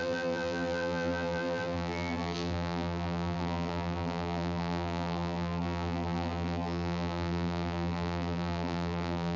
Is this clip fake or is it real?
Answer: fake